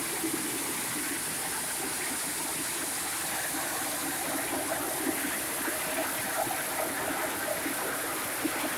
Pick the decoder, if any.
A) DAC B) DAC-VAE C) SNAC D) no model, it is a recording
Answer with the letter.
D